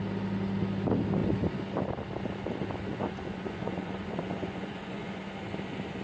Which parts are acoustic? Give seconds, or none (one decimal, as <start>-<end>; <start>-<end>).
0.0-2.9; 5.2-6.0